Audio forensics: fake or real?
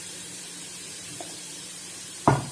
fake